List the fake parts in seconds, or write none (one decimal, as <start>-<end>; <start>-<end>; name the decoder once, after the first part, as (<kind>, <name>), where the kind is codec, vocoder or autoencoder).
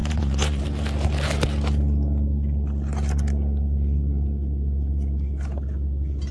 0.0-0.6 (vocoder, Vocos)